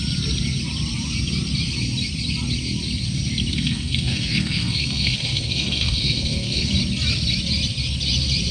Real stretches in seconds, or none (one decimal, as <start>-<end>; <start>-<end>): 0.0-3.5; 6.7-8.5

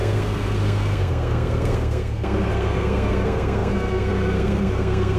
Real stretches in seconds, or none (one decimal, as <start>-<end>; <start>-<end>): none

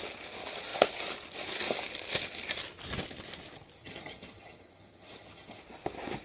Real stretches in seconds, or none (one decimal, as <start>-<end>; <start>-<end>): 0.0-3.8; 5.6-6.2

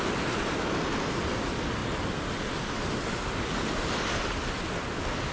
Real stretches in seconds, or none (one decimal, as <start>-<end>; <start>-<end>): 0.0-5.3

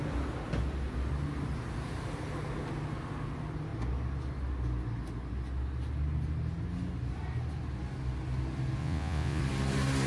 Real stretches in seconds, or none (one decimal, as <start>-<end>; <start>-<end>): 0.0-8.8; 9.4-10.1